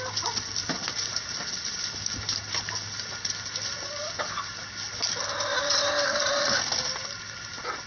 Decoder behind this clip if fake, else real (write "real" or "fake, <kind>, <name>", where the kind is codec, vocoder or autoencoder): real